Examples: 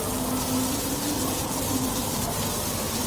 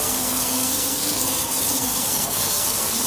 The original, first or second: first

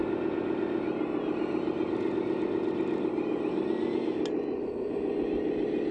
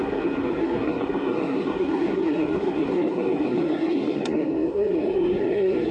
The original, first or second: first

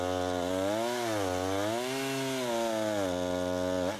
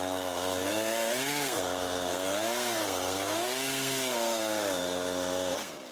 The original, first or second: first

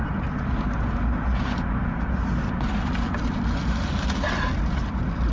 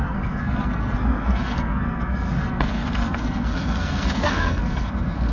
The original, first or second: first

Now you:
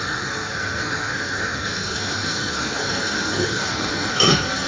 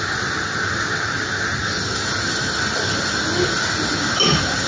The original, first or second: second